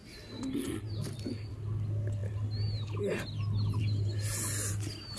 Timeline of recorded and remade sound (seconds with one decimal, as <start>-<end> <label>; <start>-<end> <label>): 0.0-5.2 recorded